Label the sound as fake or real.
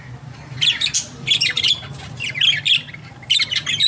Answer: real